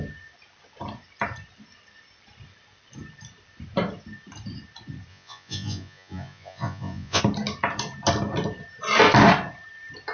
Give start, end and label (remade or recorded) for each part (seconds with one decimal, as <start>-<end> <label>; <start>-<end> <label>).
0.0-5.1 recorded; 5.1-7.2 remade; 7.2-10.1 recorded